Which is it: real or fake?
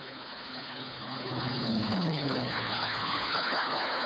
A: fake